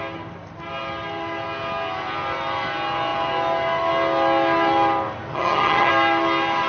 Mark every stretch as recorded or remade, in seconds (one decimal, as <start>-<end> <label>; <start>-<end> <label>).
0.0-5.3 recorded; 5.3-5.9 remade; 5.9-6.7 recorded